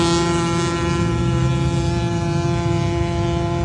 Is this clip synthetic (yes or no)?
no